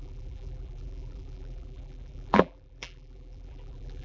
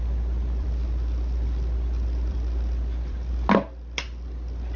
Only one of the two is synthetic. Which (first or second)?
first